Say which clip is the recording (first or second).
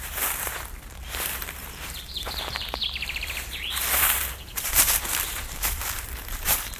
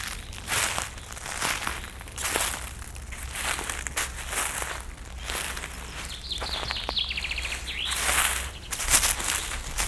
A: second